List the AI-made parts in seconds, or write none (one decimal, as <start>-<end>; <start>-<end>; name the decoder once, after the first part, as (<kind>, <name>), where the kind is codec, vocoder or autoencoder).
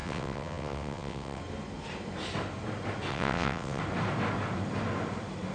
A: 0.0-1.4 (vocoder, WaveNeXt); 3.1-3.8